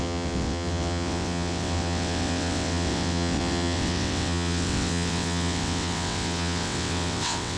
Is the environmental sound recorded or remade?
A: remade